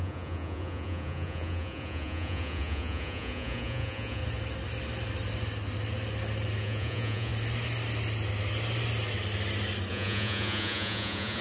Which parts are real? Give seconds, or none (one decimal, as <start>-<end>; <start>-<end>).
4.2-6.6; 7.3-9.9